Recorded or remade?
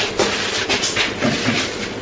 remade